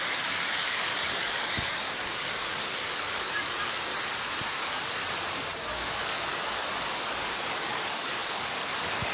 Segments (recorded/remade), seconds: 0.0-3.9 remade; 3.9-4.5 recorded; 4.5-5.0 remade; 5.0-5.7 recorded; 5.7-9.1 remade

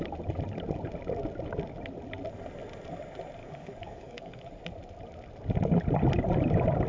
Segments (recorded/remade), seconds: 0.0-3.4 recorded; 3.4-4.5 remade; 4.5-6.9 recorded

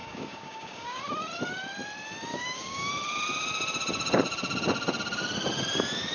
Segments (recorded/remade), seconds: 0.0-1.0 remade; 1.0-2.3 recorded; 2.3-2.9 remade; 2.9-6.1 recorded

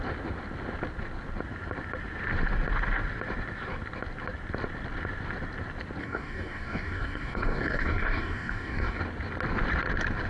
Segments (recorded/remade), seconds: 0.0-6.0 recorded; 6.0-9.0 remade; 9.0-10.3 recorded

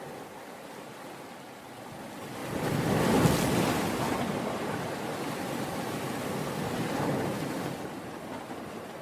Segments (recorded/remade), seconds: 0.0-9.0 recorded

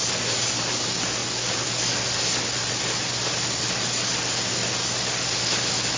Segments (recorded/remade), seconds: 0.0-6.0 recorded

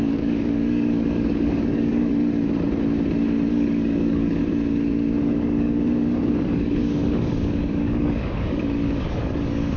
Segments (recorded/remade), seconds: 0.0-2.1 remade; 2.1-3.5 recorded; 3.5-4.4 remade; 4.4-5.2 recorded; 5.2-9.8 remade